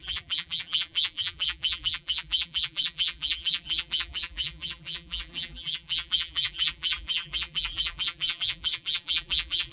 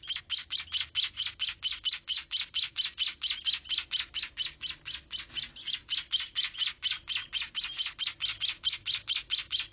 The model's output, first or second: first